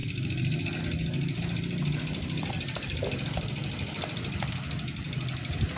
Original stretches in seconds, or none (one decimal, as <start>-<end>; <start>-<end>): 0.0-5.8